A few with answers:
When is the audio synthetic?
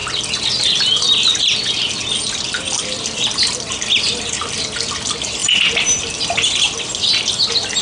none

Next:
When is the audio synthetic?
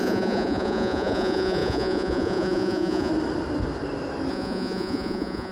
0.0-3.1 (vocoder, Vocos); 4.3-5.5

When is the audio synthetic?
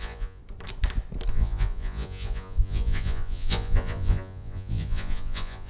0.0-0.4 (vocoder, Vocos); 1.3-5.7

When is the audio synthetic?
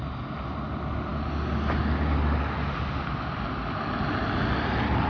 none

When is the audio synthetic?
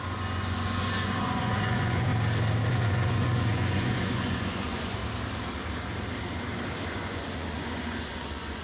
0.0-2.1 (vocoder, Vocos); 2.7-5.0; 6.9-8.6